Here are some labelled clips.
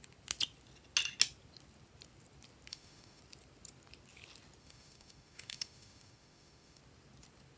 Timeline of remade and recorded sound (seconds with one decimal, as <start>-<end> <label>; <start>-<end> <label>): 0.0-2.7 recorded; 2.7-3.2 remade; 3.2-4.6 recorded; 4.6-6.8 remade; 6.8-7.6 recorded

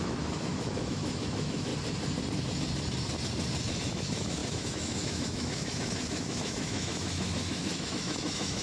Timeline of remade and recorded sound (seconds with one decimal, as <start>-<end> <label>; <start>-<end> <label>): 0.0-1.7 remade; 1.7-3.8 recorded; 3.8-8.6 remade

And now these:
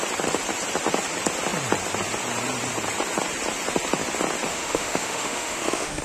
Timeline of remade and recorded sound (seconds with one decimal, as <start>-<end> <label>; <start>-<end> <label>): 0.0-4.5 recorded; 4.5-6.0 remade

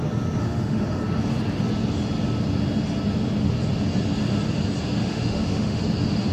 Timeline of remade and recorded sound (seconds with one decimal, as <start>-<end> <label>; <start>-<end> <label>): 0.0-0.4 recorded; 0.4-1.0 remade; 1.0-5.0 recorded; 5.0-5.8 remade; 5.8-6.3 recorded